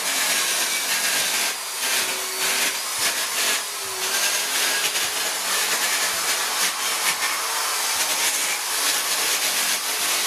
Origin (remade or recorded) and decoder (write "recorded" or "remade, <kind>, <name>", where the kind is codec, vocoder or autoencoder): recorded